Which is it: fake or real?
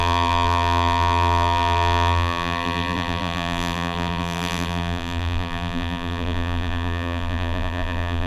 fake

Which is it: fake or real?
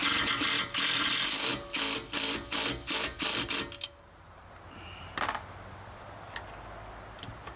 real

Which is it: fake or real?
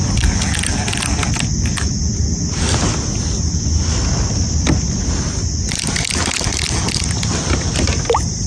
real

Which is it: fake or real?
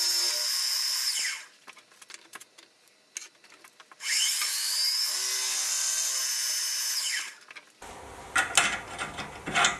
real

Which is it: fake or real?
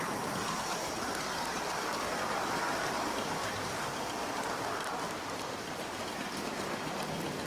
fake